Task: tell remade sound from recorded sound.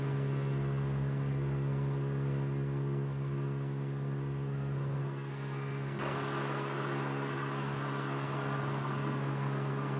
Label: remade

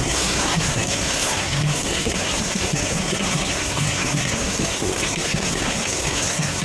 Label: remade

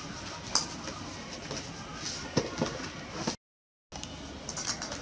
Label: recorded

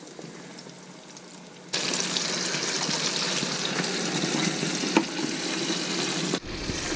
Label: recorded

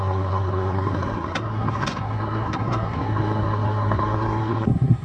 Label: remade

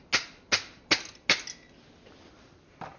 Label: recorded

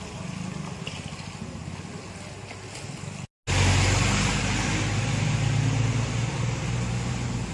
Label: recorded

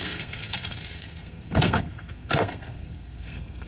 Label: remade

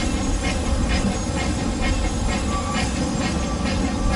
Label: recorded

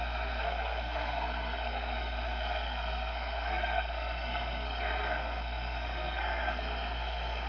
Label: remade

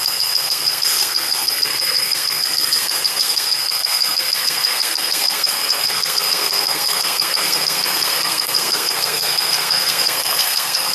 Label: remade